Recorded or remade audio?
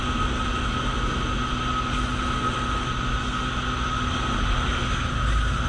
recorded